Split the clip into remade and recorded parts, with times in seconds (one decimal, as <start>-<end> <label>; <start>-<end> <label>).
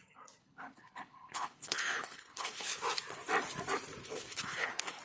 0.0-0.4 recorded; 0.4-2.8 remade; 2.8-4.0 recorded; 4.0-5.0 remade